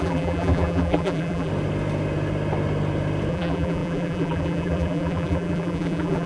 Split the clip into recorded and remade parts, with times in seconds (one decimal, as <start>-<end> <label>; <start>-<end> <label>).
0.0-1.5 remade; 1.5-3.3 recorded; 3.3-6.3 remade